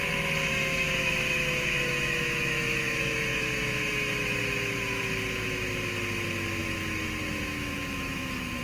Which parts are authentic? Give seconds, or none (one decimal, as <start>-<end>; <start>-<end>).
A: 0.0-0.5; 5.0-6.6